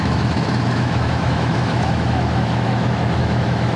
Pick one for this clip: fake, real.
fake